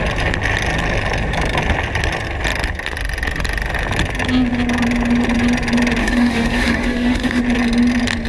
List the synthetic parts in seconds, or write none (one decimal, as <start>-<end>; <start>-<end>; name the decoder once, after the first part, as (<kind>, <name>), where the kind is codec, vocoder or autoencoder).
6.0-7.4 (autoencoder, DAC-VAE)